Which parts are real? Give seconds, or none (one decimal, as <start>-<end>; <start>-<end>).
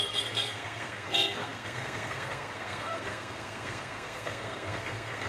none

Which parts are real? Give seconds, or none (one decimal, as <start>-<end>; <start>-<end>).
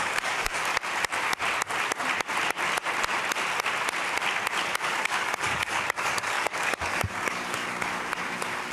0.7-4.6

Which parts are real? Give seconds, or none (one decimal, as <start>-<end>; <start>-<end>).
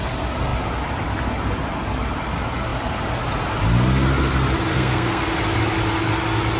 0.0-4.7; 5.2-6.6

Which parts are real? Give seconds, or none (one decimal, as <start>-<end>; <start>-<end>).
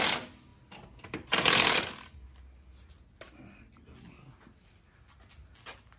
0.0-6.0